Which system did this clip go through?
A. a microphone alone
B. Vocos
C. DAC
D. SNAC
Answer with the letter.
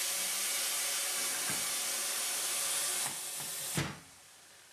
A